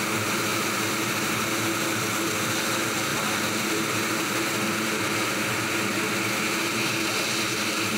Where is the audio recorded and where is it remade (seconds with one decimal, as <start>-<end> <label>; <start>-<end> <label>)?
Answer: 0.0-3.1 recorded; 3.1-4.6 remade; 4.6-8.0 recorded